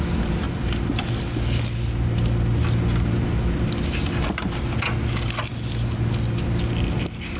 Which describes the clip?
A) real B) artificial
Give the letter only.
A